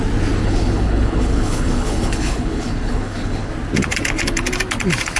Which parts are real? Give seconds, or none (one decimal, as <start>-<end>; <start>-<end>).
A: 0.0-0.4; 3.5-5.2